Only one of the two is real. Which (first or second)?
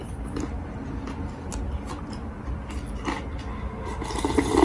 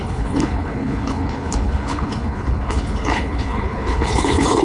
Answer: first